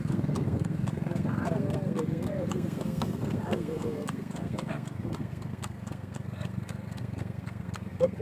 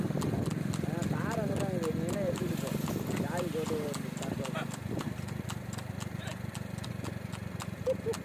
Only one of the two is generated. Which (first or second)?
first